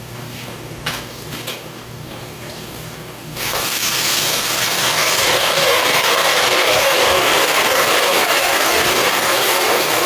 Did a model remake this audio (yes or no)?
yes